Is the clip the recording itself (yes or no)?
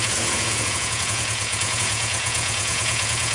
no